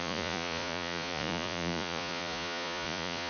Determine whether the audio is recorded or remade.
remade